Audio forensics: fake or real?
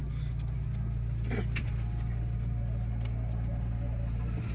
real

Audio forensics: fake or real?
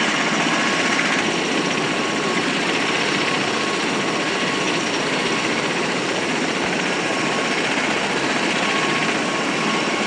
real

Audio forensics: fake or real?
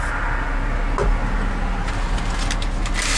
real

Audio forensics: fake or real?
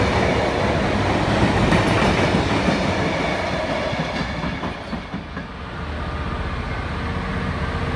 real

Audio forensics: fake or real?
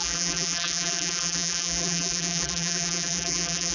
fake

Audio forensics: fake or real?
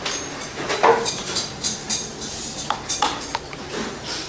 fake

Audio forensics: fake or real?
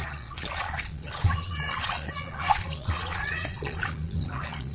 fake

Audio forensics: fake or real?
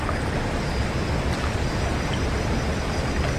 real